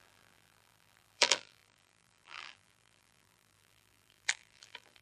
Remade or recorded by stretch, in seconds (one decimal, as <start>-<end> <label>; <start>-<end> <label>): 0.0-5.0 remade